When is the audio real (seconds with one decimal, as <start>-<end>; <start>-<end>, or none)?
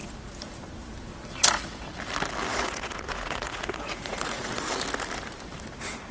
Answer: 0.0-2.5; 4.7-6.1